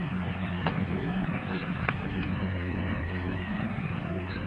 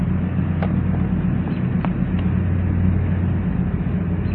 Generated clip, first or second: first